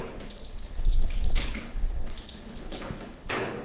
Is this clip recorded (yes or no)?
no